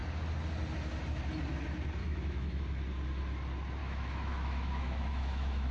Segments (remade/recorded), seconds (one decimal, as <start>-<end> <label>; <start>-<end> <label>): 0.0-2.0 recorded; 2.0-2.6 remade; 2.6-3.8 recorded; 3.8-5.7 remade